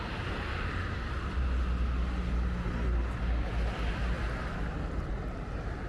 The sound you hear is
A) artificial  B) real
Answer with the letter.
B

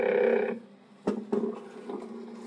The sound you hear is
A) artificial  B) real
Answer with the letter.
B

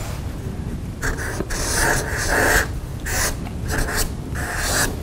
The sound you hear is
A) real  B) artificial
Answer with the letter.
A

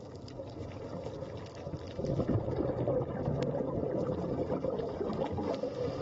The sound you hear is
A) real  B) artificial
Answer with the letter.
A